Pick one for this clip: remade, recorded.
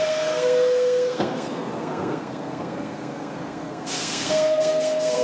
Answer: remade